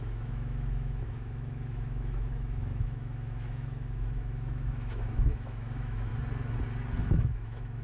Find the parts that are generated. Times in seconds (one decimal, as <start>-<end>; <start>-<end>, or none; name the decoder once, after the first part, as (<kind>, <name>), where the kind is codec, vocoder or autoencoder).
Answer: 0.0-6.1 (autoencoder, DAC-VAE); 7.0-7.8